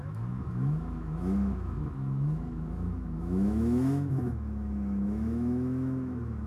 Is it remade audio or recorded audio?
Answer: remade